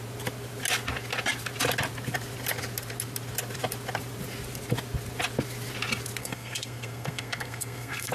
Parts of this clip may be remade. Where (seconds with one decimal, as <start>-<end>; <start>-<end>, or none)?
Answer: 6.2-8.1